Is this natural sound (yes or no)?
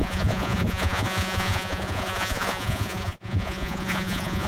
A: no